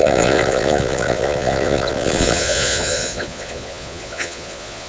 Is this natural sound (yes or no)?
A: no